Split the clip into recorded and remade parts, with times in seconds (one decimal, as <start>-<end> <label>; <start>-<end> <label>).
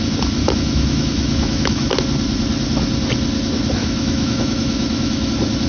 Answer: 0.0-0.4 recorded; 0.4-1.9 remade; 1.9-3.8 recorded; 3.8-5.3 remade; 5.3-5.7 recorded